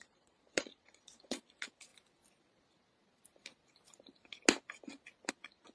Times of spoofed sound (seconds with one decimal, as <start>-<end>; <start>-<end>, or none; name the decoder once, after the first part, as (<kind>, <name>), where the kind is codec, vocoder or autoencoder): 0.0-1.9 (vocoder, Vocos); 5.3-5.7